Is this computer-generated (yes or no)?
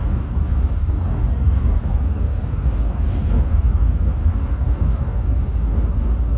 yes